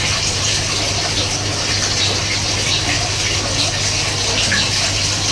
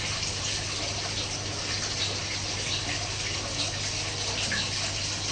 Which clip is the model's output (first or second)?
second